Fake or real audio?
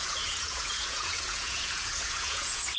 fake